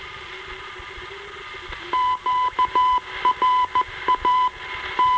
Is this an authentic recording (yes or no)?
yes